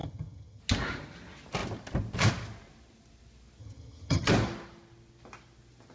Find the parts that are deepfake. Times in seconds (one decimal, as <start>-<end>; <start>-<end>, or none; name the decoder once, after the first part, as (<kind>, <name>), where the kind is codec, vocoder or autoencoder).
0.0-0.6 (vocoder, HiFi-GAN); 3.6-4.3